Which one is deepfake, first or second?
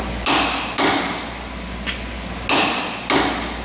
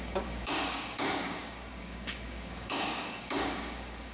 second